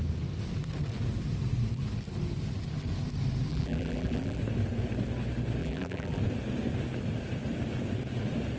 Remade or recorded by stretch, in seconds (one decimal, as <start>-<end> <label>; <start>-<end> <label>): 0.0-3.5 recorded; 3.5-4.4 remade; 4.4-5.6 recorded; 5.6-6.2 remade; 6.2-8.6 recorded